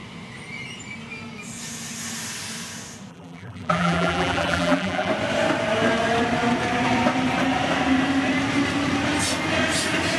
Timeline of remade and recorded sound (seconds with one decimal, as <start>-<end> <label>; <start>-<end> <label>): 0.0-3.1 recorded; 3.1-5.1 remade; 5.1-10.2 recorded